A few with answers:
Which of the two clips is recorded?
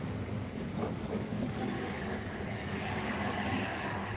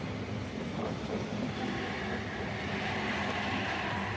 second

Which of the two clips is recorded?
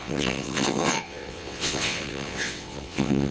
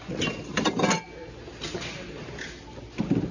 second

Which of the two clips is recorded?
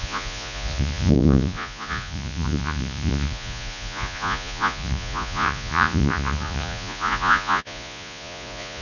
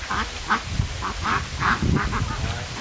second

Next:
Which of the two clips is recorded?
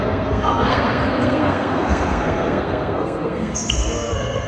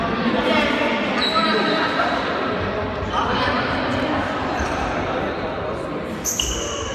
second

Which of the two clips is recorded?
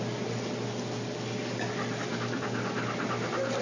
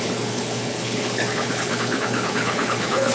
first